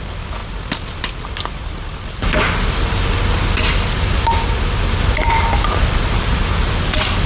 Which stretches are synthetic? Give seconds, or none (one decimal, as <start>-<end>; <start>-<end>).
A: none